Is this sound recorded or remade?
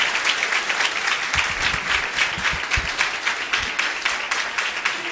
recorded